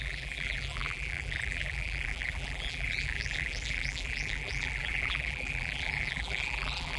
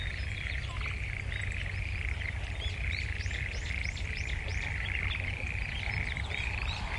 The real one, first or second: second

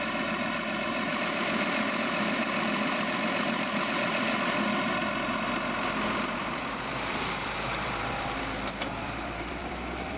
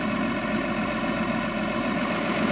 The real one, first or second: second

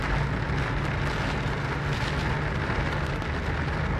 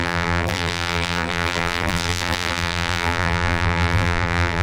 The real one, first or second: first